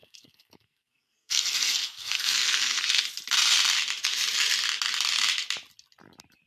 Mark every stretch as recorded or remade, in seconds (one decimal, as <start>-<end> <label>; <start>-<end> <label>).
0.0-3.0 remade; 3.0-6.5 recorded